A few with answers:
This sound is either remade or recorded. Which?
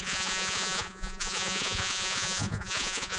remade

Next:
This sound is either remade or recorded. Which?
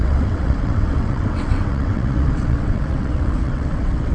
remade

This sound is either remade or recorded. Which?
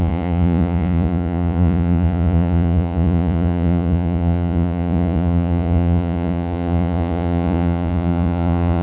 remade